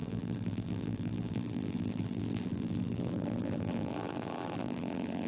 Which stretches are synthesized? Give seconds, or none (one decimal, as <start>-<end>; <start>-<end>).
0.0-5.3